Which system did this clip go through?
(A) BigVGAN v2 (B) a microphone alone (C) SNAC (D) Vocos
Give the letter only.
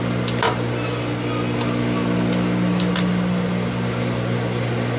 B